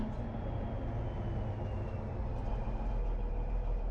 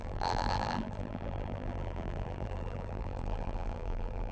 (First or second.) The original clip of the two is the first